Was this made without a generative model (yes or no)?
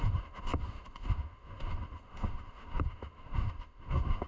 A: no